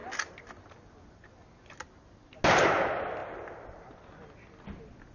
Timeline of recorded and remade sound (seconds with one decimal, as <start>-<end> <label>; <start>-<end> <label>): 0.0-5.1 recorded